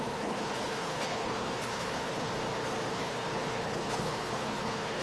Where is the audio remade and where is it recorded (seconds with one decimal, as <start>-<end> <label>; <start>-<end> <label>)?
0.0-2.3 remade; 2.3-2.9 recorded; 2.9-5.0 remade